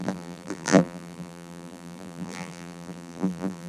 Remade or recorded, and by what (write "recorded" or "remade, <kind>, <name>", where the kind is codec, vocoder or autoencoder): remade, vocoder, BigVGAN v2